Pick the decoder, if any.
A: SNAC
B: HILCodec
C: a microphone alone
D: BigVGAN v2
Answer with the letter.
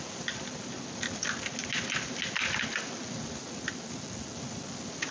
C